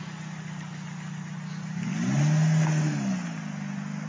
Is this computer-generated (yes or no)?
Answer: no